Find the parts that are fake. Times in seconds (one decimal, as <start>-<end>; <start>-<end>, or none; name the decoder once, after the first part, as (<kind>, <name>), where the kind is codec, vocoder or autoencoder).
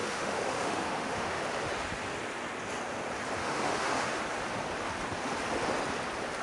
0.0-1.4 (autoencoder, DAC-VAE); 3.4-4.2